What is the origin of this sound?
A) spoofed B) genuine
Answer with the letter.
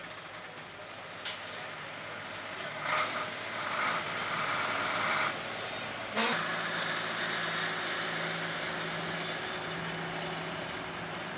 B